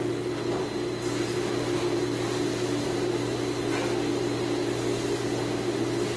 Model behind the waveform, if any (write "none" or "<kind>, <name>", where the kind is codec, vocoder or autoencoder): none